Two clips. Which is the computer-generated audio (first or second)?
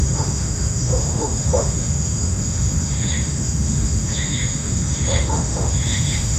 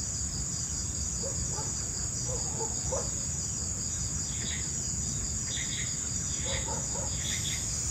first